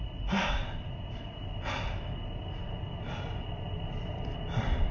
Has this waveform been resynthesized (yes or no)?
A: no